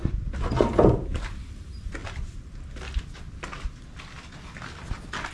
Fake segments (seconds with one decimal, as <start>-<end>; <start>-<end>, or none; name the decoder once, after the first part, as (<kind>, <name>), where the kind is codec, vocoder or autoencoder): 0.0-2.0 (vocoder, BigVGAN v2)

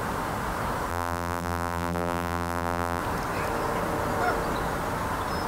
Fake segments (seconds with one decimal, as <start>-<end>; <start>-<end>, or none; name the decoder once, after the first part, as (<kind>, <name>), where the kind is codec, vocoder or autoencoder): 0.9-3.0 (vocoder, BigVGAN v2)

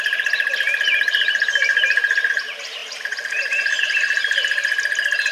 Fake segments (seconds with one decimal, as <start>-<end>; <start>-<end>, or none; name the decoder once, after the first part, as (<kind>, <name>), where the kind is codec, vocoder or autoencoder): 0.0-4.2 (vocoder, BigVGAN v2)

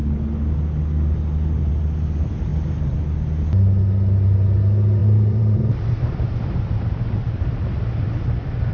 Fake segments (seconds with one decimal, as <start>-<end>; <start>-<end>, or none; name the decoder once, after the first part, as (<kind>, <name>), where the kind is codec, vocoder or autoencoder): 5.0-7.4 (vocoder, BigVGAN v2)